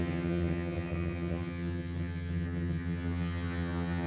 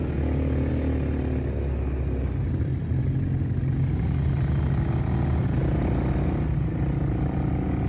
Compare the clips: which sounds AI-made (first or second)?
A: first